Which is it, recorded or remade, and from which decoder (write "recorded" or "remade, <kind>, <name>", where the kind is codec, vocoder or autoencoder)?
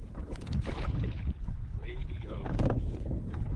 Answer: remade, codec, HILCodec